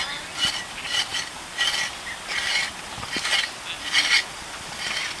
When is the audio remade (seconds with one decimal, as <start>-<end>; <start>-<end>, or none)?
none